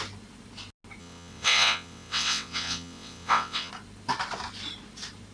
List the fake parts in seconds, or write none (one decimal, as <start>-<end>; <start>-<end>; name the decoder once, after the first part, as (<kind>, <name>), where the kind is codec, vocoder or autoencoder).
1.0-3.7 (vocoder, WaveNeXt)

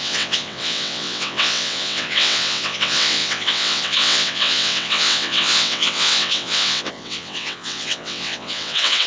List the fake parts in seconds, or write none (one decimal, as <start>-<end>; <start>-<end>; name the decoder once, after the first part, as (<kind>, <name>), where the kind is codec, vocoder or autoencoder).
0.0-9.1 (vocoder, WaveNeXt)

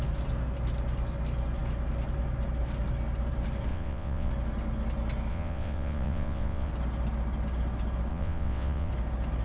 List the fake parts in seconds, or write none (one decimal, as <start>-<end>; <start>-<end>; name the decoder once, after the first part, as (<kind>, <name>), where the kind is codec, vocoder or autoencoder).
3.7-4.3 (vocoder, WaveNeXt); 5.3-6.7; 8.1-8.9

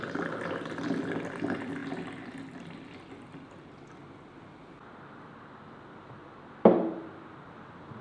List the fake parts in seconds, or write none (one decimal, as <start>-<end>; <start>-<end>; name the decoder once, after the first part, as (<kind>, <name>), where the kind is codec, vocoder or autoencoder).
none

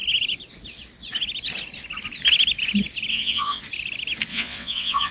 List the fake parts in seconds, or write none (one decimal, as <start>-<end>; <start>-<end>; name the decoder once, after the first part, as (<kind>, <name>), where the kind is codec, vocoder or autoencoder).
3.1-3.6 (vocoder, WaveNeXt); 4.3-5.1

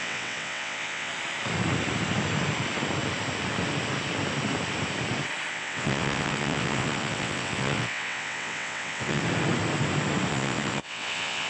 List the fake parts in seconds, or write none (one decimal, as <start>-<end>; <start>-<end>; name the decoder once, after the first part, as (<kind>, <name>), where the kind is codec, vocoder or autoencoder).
0.0-1.1 (vocoder, WaveNeXt); 5.5-9.2; 10.3-11.5

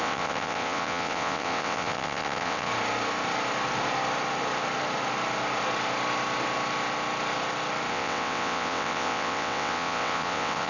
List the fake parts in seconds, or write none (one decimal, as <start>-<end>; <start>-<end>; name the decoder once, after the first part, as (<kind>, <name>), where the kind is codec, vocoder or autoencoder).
0.0-2.7 (vocoder, WaveNeXt); 7.9-10.7

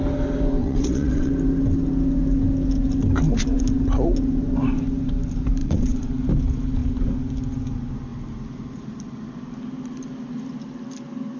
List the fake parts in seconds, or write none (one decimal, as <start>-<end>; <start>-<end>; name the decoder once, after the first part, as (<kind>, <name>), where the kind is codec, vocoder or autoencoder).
0.6-1.3 (vocoder, WaveNeXt); 5.6-6.1